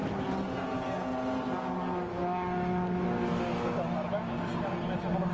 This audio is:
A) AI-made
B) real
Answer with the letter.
B